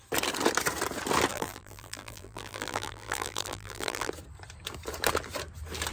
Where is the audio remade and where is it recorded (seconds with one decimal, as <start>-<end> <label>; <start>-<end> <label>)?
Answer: 0.0-1.3 recorded; 1.3-4.1 remade; 4.1-5.9 recorded